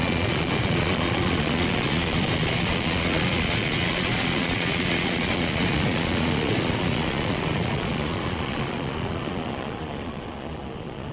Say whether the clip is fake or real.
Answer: fake